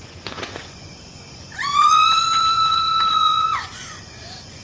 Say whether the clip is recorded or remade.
remade